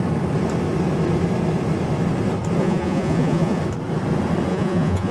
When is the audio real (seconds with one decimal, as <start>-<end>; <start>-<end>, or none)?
0.0-2.6; 3.6-4.5